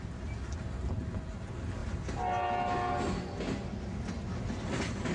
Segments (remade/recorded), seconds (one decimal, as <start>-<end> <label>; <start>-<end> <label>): 0.0-5.1 recorded

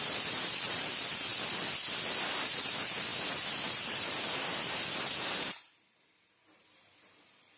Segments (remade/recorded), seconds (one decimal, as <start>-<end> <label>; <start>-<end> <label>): 0.0-1.3 remade; 1.3-2.2 recorded; 2.2-7.6 remade

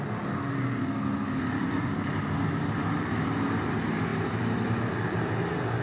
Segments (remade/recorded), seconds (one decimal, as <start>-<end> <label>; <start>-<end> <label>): 0.0-5.8 recorded

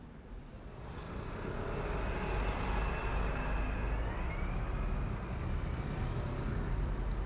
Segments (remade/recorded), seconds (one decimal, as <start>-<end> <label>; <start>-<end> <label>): 0.0-7.3 recorded

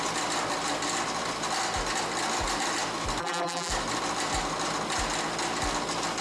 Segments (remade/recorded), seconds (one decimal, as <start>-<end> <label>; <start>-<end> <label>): 0.0-3.2 recorded; 3.2-3.7 remade; 3.7-6.2 recorded

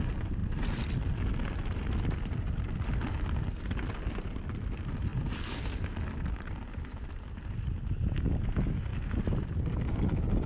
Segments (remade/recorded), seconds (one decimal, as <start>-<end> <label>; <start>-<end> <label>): 0.0-0.4 recorded; 0.4-1.1 remade; 1.1-5.1 recorded; 5.1-7.2 remade; 7.2-10.5 recorded

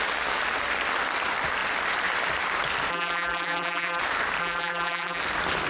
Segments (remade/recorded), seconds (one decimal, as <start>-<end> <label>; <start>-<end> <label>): 0.0-2.9 recorded; 2.9-4.0 remade; 4.0-4.4 recorded; 4.4-5.2 remade; 5.2-5.7 recorded

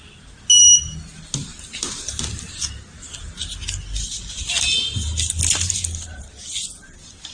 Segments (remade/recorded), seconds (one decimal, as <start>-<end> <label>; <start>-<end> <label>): 0.0-7.3 recorded